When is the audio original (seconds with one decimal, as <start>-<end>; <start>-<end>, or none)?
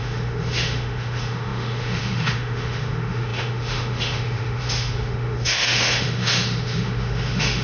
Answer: none